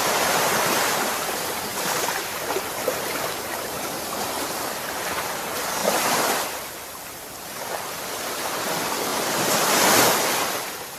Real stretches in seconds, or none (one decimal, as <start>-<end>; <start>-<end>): 0.0-1.7; 5.0-5.8; 7.7-9.1